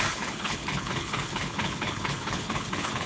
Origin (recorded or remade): remade